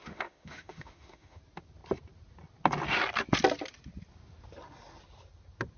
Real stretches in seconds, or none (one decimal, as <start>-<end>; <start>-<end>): 1.4-5.8